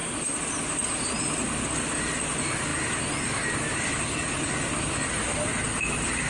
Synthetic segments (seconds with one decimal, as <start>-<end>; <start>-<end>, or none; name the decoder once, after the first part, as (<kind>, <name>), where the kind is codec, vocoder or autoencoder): none

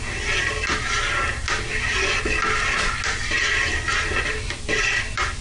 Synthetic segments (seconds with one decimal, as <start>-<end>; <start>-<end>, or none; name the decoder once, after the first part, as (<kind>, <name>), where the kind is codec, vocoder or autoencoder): none

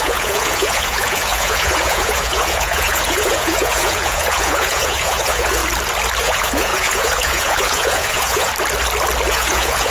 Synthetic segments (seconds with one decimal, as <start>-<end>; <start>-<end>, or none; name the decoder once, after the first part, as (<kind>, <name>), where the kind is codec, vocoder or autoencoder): 0.0-5.6 (vocoder, Vocos); 6.2-8.5; 9.3-9.9

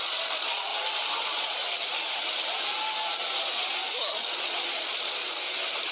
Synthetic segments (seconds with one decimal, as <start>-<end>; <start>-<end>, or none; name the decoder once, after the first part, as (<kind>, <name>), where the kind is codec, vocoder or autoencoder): 0.0-0.7 (vocoder, Vocos); 1.2-1.6; 4.1-5.2

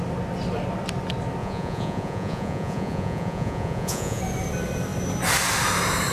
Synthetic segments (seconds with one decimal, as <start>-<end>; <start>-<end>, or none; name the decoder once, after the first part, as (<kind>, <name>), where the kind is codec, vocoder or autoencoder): 1.4-4.2 (vocoder, Vocos)

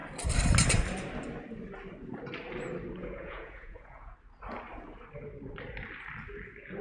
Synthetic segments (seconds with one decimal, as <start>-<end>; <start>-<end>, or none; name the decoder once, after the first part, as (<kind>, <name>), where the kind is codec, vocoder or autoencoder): 3.0-4.1 (vocoder, Vocos)